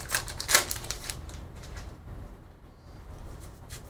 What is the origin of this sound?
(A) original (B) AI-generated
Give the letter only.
B